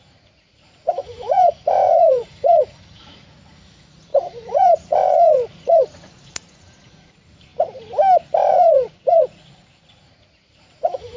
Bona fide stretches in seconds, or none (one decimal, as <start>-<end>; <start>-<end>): 7.5-8.5